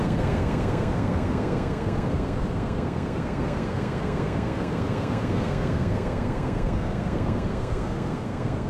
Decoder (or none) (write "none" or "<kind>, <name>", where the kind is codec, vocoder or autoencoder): codec, SNAC